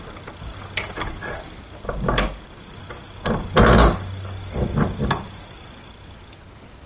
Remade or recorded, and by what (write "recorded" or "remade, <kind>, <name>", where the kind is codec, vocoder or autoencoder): recorded